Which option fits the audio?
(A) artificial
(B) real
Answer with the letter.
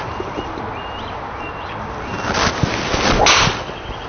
B